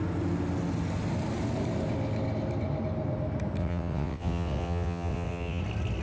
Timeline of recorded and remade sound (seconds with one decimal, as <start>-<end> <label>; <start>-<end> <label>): 0.0-3.6 recorded; 3.6-5.6 remade; 5.6-6.0 recorded